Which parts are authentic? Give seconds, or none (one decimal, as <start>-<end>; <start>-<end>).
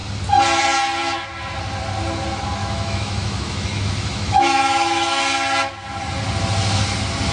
0.0-2.6; 5.2-7.3